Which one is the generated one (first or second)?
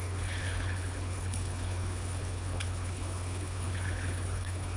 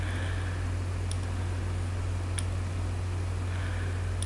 first